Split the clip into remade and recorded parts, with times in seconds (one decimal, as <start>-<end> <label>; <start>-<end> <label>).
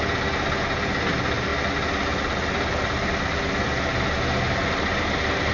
0.0-5.5 recorded